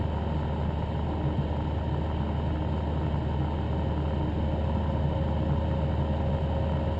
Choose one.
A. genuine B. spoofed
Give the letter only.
A